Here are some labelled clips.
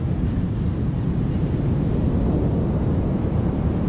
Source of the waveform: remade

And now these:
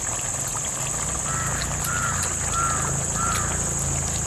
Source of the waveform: recorded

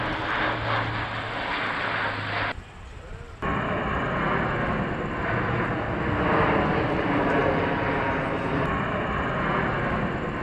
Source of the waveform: recorded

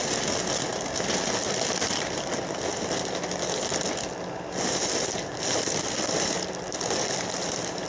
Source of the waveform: recorded